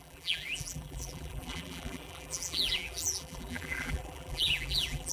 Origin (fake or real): fake